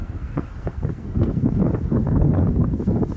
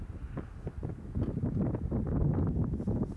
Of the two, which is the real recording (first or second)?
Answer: second